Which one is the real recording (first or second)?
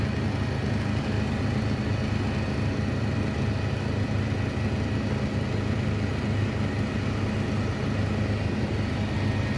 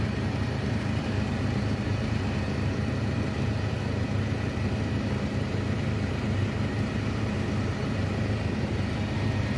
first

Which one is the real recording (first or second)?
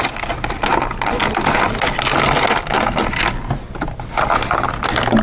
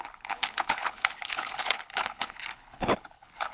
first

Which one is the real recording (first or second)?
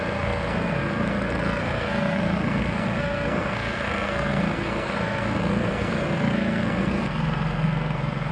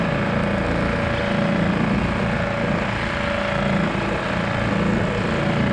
second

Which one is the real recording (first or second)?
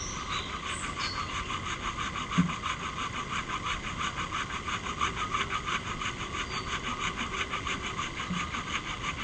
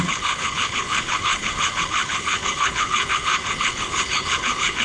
first